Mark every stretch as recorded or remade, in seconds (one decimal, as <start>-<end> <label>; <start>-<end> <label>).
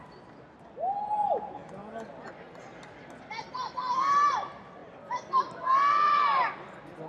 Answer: 0.0-7.1 recorded